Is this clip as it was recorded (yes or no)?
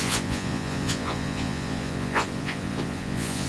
no